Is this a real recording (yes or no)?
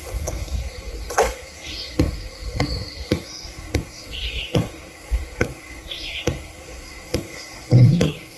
no